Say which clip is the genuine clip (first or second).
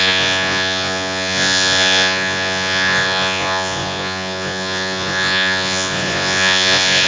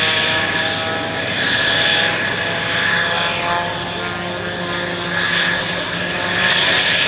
second